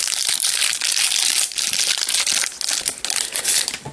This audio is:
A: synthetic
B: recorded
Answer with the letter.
B